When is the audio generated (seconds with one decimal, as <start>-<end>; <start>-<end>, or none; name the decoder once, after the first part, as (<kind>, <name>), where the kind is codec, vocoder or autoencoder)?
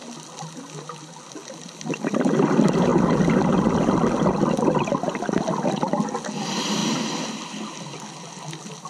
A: none